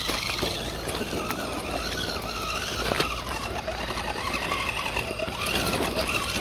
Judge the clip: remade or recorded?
recorded